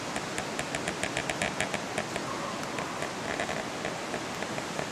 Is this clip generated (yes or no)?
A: no